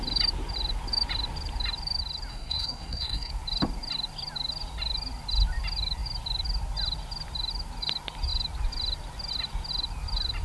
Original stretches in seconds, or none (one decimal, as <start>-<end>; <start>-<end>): 0.0-2.3; 3.3-10.4